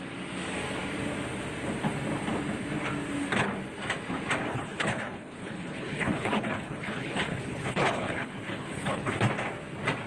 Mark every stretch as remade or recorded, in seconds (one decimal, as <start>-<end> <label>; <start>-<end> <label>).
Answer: 0.0-4.5 recorded; 4.5-9.1 remade; 9.1-10.1 recorded